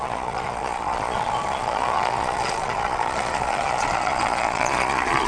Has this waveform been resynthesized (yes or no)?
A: yes